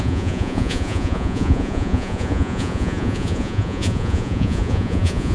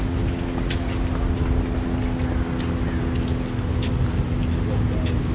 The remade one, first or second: first